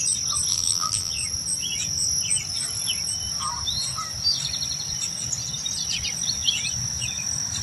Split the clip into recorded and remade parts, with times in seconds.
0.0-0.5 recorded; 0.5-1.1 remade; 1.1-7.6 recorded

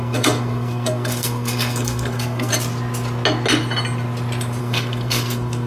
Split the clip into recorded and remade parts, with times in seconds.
0.0-2.5 remade; 2.5-4.6 recorded; 4.6-5.7 remade

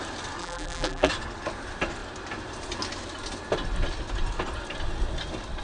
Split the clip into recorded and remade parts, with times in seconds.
0.0-0.4 recorded; 0.4-1.1 remade; 1.1-5.6 recorded

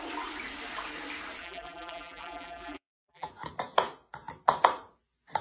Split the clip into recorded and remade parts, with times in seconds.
0.0-1.4 recorded; 1.4-3.3 remade; 3.3-5.4 recorded